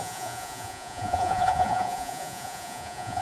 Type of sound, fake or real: fake